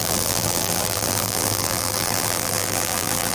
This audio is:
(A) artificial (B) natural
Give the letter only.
A